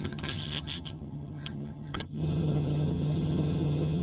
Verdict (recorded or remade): remade